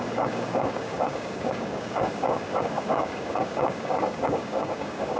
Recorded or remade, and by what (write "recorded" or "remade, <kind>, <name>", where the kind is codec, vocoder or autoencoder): remade, codec, DAC